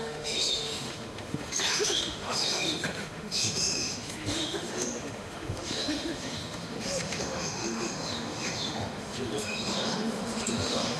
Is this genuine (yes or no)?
no